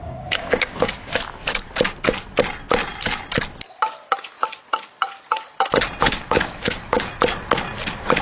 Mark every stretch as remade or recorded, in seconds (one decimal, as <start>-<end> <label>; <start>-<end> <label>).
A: 0.0-0.8 remade; 0.8-6.1 recorded; 6.1-7.1 remade; 7.1-8.2 recorded